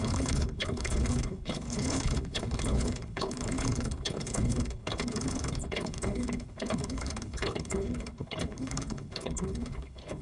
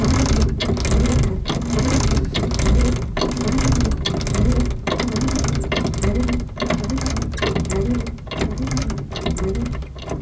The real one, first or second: second